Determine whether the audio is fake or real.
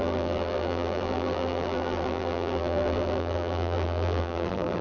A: fake